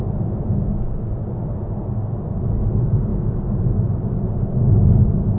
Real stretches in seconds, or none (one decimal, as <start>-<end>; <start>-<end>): 0.0-5.4